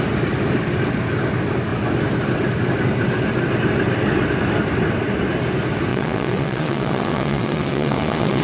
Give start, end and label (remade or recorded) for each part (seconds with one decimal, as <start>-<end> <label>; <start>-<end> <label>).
0.0-5.9 recorded; 5.9-8.4 remade